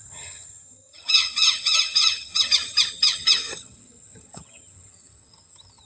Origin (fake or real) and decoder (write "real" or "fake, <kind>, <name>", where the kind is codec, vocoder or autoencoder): fake, vocoder, HiFi-GAN